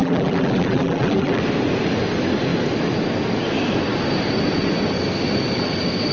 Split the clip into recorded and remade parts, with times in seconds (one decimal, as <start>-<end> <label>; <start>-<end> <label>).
0.0-1.4 remade; 1.4-6.1 recorded